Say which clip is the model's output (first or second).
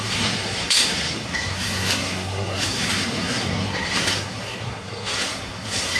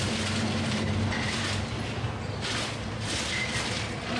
first